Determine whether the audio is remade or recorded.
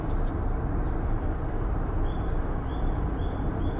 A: recorded